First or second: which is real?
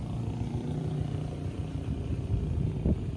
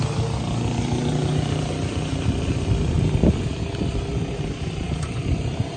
second